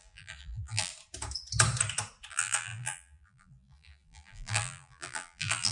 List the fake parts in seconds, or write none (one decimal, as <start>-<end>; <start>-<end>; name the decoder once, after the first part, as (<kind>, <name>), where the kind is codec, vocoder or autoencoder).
0.0-0.9 (vocoder, BigVGAN v2); 2.3-5.7